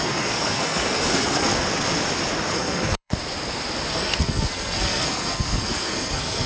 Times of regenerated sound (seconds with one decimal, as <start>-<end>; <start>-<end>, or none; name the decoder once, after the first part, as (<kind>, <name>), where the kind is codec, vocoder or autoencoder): 0.0-1.5 (codec, SNAC); 2.5-3.1; 3.9-6.5